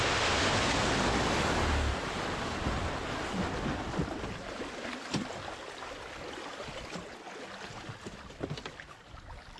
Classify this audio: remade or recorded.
recorded